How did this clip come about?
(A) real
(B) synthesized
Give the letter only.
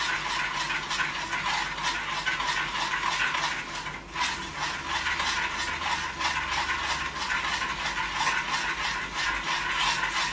A